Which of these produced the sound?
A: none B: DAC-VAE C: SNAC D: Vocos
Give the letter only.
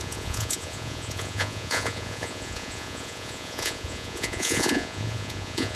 D